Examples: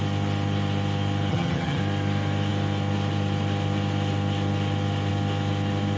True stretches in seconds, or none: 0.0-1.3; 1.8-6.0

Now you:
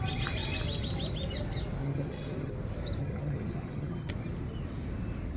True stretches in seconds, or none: 0.0-1.8; 2.5-3.0; 4.1-5.4

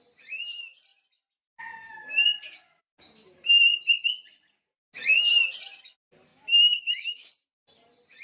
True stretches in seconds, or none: 0.0-6.3; 7.3-8.2